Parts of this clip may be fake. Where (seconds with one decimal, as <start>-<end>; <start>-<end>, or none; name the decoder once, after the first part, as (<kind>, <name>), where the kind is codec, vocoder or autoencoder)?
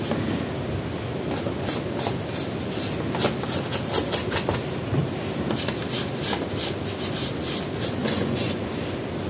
8.0-8.6 (vocoder, Vocos)